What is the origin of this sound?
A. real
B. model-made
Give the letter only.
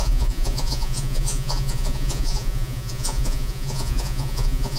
B